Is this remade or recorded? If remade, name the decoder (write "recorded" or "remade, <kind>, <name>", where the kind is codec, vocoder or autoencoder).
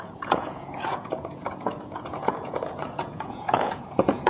remade, vocoder, Vocos